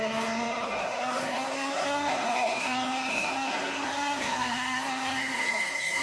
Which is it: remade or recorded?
remade